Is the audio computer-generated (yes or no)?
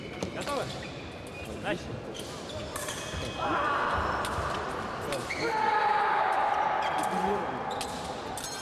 no